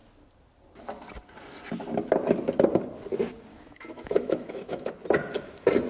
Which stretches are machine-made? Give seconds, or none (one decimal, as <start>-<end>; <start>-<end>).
3.5-4.9